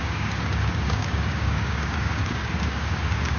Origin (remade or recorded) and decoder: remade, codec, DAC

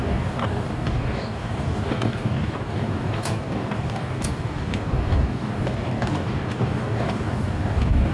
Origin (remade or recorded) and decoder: remade, codec, DAC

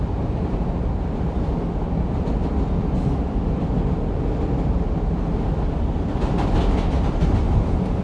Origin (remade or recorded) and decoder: recorded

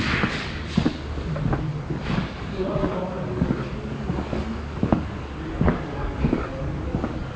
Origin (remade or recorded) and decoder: remade, codec, DAC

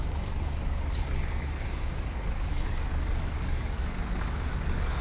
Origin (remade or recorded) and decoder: remade, codec, DAC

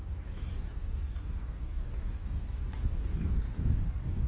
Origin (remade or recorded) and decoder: remade, codec, DAC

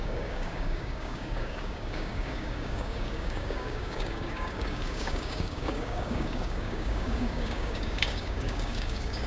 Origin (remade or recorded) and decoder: remade, codec, DAC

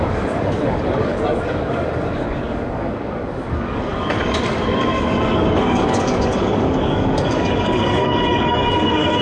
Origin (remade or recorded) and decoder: remade, codec, DAC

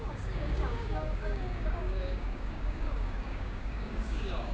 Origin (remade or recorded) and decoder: remade, codec, DAC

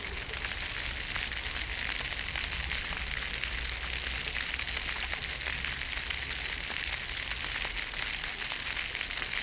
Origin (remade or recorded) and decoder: recorded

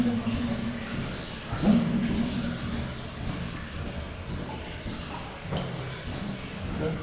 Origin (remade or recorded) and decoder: recorded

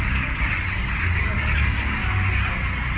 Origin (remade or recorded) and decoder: remade, codec, DAC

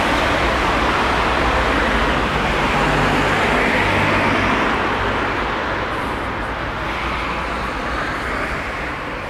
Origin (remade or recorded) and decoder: recorded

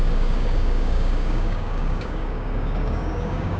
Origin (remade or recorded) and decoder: remade, codec, DAC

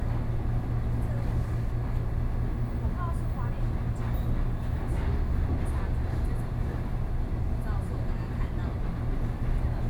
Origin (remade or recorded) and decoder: recorded